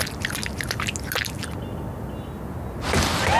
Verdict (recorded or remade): recorded